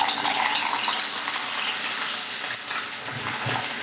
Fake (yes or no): no